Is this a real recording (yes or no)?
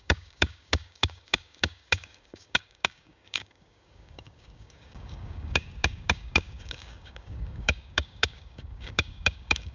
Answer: no